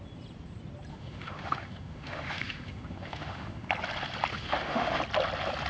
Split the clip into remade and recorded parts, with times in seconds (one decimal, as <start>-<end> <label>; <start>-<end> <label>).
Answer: 0.0-0.9 recorded; 0.9-3.7 remade; 3.7-4.3 recorded; 4.3-5.0 remade; 5.0-5.7 recorded